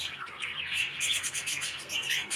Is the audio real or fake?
fake